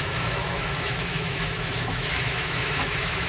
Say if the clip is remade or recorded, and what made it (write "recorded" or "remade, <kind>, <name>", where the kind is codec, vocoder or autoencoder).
remade, autoencoder, DAC-VAE